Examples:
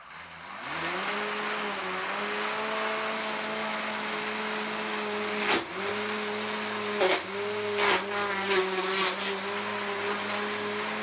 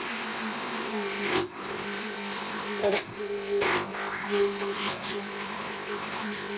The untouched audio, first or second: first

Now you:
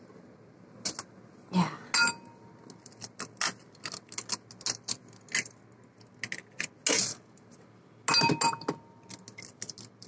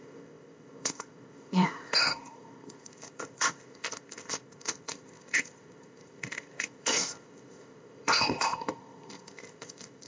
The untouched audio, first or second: first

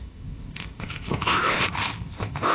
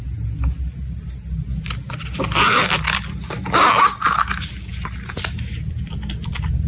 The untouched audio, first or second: second